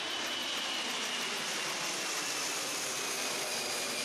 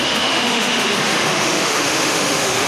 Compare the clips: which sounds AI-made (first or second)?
second